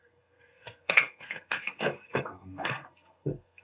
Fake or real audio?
fake